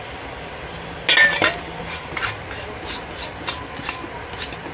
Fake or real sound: real